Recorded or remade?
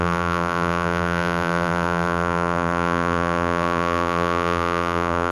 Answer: remade